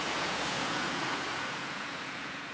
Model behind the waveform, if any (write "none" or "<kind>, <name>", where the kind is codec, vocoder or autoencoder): vocoder, Vocos